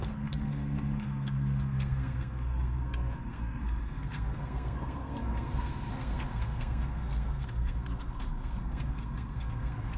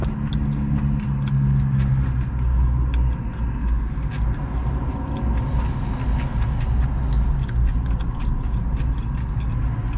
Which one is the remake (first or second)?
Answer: first